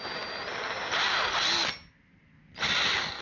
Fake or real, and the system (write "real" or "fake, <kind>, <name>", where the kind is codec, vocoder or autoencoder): real